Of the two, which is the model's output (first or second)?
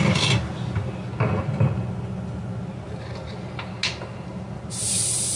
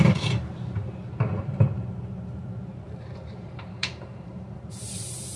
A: second